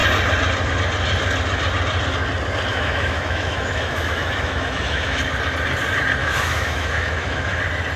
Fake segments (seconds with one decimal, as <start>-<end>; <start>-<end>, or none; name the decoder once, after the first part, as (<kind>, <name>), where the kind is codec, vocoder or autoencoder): 2.7-5.2 (autoencoder, DAC-VAE); 6.2-7.6